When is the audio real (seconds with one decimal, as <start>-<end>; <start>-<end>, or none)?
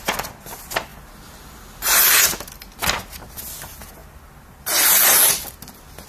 0.0-6.1